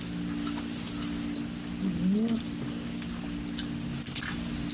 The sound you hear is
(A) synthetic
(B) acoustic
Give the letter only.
B